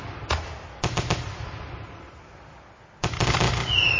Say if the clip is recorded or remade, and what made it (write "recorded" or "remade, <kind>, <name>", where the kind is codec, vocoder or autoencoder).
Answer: recorded